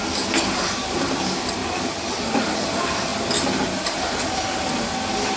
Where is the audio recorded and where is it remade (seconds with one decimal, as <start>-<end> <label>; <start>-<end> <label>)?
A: 0.0-5.4 recorded